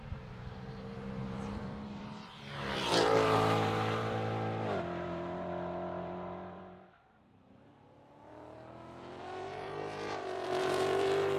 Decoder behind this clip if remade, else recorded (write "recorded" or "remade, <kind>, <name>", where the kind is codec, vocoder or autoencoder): remade, vocoder, BigVGAN v2